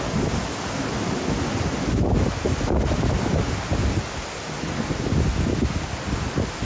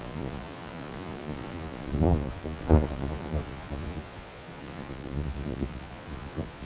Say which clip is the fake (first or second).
second